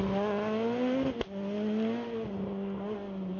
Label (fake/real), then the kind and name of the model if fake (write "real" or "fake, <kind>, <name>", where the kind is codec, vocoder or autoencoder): real